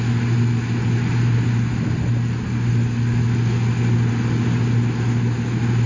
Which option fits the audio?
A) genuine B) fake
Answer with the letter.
A